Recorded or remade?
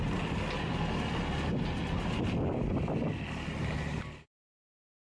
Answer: recorded